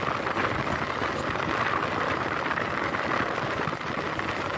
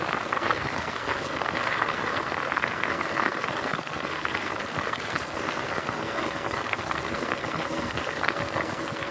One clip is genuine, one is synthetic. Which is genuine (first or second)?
first